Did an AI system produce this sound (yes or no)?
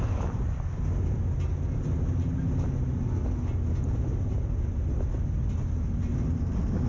no